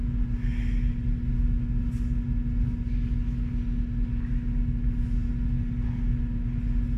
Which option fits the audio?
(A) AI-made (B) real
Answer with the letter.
B